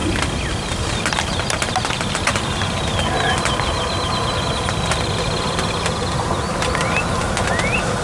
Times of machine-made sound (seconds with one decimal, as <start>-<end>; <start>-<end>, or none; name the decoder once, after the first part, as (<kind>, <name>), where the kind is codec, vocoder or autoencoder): none